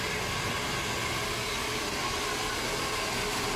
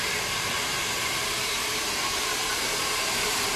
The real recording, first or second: first